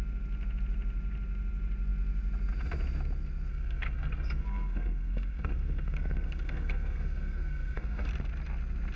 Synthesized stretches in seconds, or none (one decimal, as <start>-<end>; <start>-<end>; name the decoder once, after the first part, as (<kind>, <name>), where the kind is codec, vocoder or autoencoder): 3.5-8.1 (codec, SNAC)